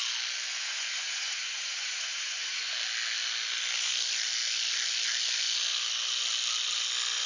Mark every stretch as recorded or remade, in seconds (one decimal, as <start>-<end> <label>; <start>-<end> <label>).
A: 0.0-0.5 recorded; 0.5-2.7 remade; 2.7-7.3 recorded